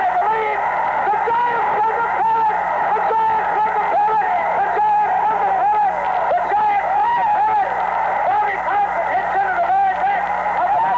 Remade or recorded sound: recorded